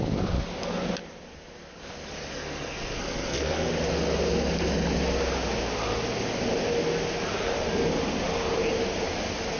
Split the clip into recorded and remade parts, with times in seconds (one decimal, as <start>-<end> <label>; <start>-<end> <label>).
0.0-2.3 recorded; 2.3-3.7 remade; 3.7-9.6 recorded